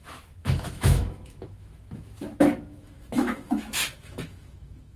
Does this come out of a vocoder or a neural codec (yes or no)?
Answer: yes